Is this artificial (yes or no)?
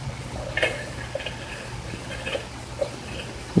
no